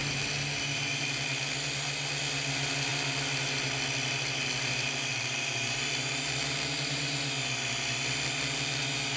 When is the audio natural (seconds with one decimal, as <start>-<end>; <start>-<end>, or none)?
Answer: 0.0-5.1; 5.8-9.2